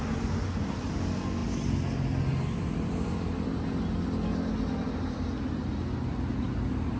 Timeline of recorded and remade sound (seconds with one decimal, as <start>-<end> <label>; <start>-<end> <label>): 0.0-7.0 recorded